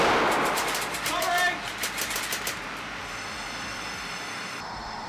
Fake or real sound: real